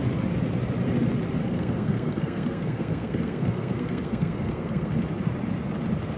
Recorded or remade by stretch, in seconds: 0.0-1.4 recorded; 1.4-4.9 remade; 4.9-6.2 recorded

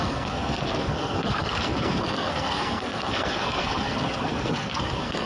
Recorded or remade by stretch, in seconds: 0.0-5.3 remade

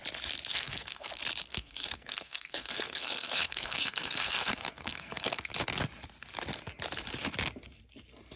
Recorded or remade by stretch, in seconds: 0.0-0.5 recorded; 0.5-1.1 remade; 1.1-1.5 recorded; 1.5-5.5 remade; 5.5-8.4 recorded